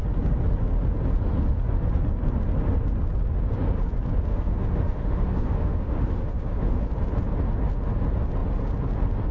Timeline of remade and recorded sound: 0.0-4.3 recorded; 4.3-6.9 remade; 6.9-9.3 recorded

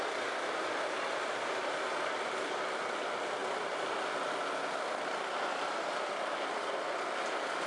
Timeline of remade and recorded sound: 0.0-7.7 recorded